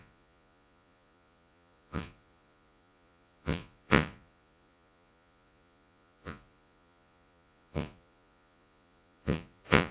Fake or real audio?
fake